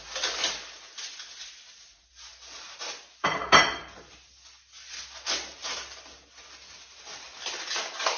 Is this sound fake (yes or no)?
no